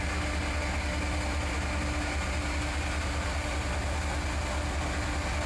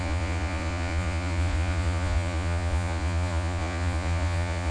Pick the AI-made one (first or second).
second